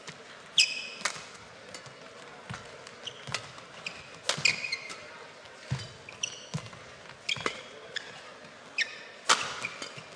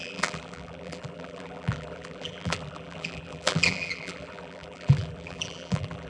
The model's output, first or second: second